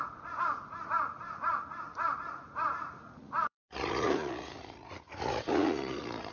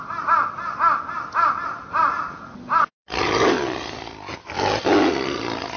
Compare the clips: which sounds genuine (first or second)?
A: second